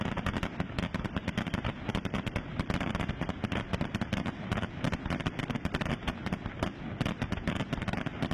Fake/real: real